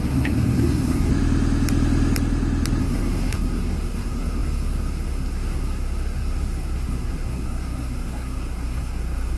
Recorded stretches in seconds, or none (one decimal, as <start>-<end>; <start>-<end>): 1.1-2.8